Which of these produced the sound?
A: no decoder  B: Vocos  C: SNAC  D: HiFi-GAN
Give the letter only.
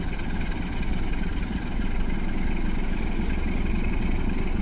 A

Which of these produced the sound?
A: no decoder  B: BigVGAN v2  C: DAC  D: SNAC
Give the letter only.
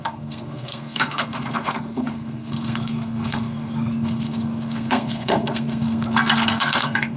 D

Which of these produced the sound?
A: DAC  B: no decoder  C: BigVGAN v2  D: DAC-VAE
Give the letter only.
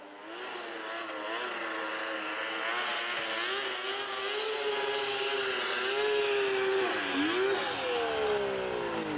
B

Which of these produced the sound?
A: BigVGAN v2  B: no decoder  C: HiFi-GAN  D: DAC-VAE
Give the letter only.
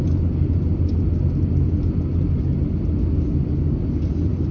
B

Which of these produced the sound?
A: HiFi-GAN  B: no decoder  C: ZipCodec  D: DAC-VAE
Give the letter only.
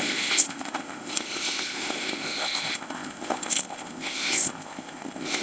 C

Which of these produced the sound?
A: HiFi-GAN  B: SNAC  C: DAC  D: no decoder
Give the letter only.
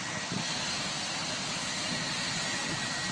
D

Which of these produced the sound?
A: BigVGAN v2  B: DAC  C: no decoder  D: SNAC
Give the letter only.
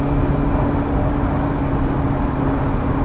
C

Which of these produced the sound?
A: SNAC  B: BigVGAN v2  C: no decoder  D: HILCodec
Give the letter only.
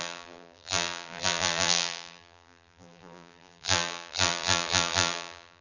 B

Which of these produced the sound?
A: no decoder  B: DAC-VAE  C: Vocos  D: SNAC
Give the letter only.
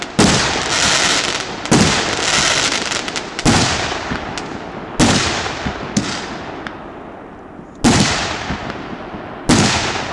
A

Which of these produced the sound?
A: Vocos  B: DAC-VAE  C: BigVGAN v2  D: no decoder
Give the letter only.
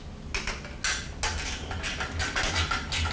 D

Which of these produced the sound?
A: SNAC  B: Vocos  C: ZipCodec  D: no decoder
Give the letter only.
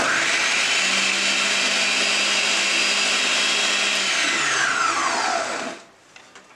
D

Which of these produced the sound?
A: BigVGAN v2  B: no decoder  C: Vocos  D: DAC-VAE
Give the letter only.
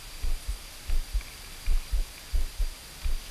B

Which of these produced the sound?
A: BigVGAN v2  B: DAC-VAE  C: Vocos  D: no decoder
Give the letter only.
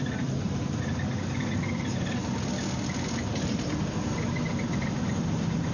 D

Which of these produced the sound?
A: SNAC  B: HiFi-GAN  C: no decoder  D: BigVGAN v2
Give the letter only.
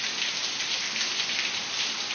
C